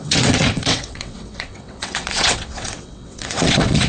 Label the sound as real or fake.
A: fake